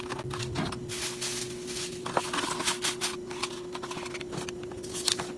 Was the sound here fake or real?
real